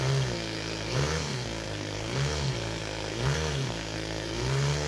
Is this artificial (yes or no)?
yes